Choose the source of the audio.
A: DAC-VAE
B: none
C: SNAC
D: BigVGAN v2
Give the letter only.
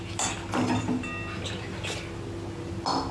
B